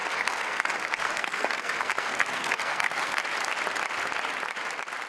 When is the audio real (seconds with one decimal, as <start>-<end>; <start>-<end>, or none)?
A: 3.2-5.1